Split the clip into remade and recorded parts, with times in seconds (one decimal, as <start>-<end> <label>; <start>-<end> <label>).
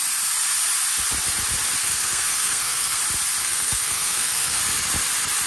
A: 0.0-1.8 recorded; 1.8-3.0 remade; 3.0-3.4 recorded; 3.4-4.6 remade; 4.6-5.5 recorded